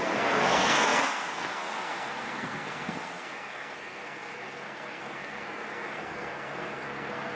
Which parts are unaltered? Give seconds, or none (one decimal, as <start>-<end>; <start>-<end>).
none